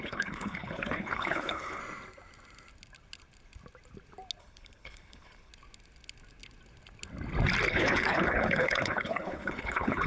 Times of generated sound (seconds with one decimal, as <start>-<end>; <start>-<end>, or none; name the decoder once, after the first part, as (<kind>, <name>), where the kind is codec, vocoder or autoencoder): 0.0-1.8 (codec, HILCodec); 4.4-5.5; 7.7-10.1